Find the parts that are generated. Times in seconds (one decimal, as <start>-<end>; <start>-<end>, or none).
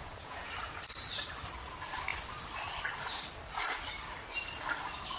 0.0-0.5